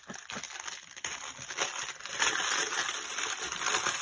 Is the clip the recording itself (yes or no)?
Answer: yes